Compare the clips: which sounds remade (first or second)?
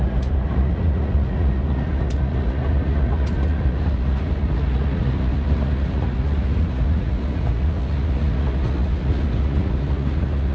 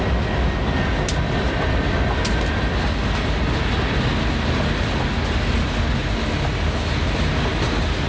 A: first